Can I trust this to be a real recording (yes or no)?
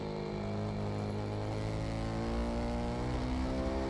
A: yes